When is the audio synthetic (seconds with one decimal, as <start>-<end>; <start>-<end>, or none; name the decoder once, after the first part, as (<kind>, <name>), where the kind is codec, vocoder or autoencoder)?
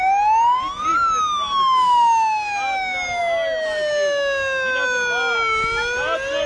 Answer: none